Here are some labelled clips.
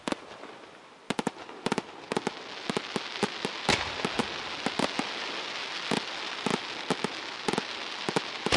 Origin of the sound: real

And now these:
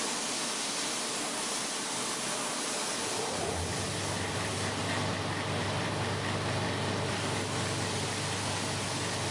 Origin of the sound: real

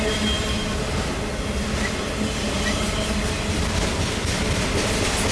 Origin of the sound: real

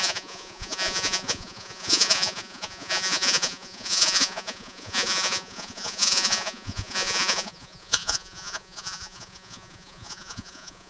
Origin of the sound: fake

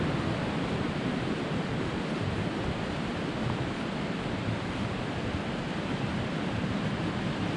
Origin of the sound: real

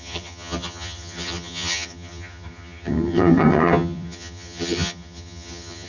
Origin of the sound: fake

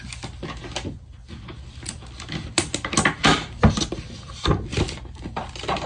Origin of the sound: real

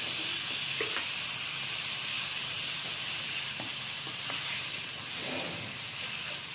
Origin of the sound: real